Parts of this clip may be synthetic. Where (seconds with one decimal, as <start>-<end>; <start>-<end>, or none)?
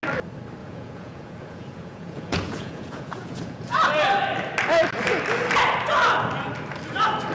0.6-3.6